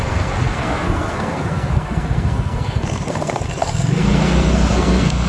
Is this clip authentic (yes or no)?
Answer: no